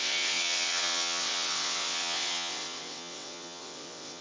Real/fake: fake